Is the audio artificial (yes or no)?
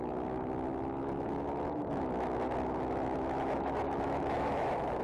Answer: yes